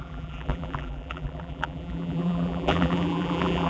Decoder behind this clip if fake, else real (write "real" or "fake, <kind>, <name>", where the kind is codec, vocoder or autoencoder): fake, vocoder, BigVGAN v2